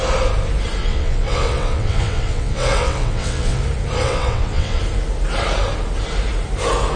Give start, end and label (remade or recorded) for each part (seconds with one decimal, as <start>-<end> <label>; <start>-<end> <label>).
0.0-0.8 recorded; 0.8-3.6 remade; 3.6-4.0 recorded; 4.0-4.8 remade; 4.8-7.0 recorded